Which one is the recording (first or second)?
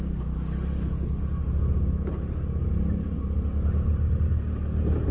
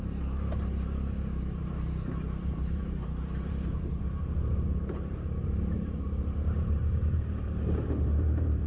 first